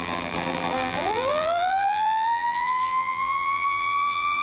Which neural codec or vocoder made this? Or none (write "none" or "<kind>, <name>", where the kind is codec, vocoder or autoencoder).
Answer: vocoder, BigVGAN v2